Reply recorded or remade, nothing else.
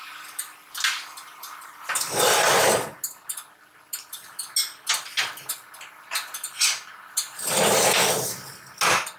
recorded